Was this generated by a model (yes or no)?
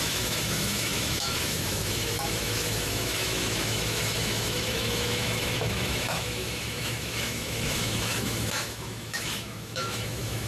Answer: yes